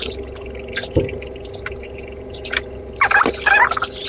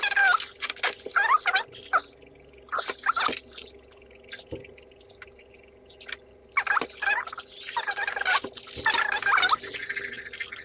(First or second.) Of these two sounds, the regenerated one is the first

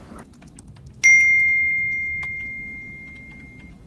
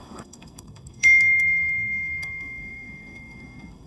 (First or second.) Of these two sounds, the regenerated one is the second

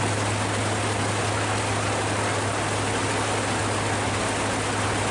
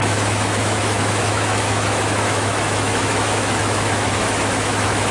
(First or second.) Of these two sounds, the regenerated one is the second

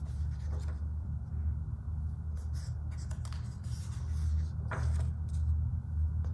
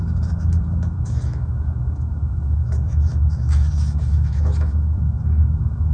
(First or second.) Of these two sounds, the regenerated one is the second